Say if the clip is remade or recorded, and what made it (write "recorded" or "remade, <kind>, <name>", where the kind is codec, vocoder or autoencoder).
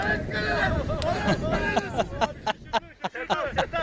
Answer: recorded